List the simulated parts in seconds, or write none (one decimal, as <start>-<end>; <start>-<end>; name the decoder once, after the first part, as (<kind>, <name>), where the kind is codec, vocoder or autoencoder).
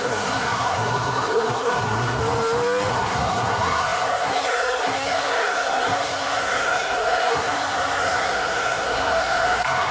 0.0-2.2 (codec, SNAC); 2.9-9.9